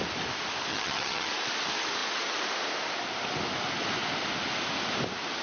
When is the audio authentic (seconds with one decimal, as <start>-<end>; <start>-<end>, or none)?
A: 0.0-0.7; 1.3-5.4